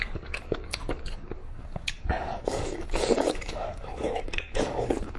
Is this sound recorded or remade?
remade